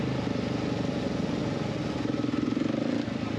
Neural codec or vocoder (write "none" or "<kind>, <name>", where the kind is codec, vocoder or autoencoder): none